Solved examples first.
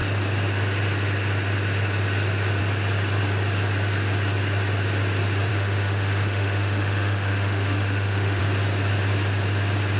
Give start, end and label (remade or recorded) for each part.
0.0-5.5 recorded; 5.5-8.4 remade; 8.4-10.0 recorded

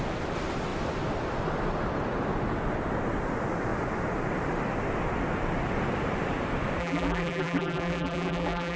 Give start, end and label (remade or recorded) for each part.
0.0-6.8 recorded; 6.8-8.8 remade

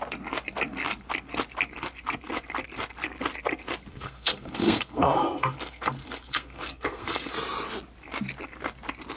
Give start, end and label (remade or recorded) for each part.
0.0-3.9 recorded; 3.9-7.3 remade; 7.3-9.2 recorded

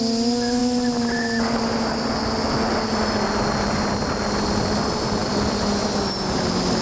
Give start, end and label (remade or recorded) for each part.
0.0-6.8 recorded

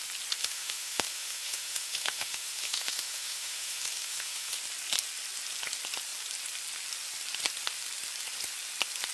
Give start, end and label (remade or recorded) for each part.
0.0-0.4 recorded; 0.4-4.6 remade; 4.6-9.1 recorded

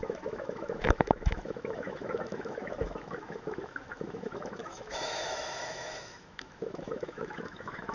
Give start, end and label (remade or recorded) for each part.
0.0-7.9 remade

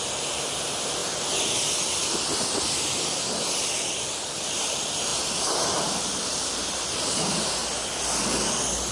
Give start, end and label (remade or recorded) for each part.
0.0-1.0 remade; 1.0-3.6 recorded; 3.6-5.1 remade; 5.1-5.7 recorded; 5.7-7.6 remade; 7.6-8.2 recorded; 8.2-8.9 remade

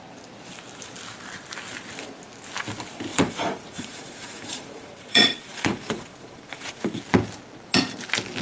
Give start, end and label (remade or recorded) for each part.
0.0-3.1 recorded; 3.1-7.0 remade; 7.0-8.4 recorded